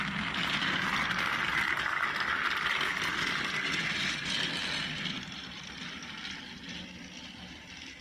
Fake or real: real